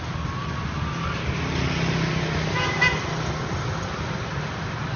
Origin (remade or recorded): recorded